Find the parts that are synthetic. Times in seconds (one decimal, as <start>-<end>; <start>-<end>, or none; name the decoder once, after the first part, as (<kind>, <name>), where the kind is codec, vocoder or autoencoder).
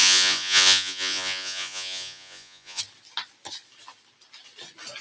0.0-2.8 (vocoder, Vocos)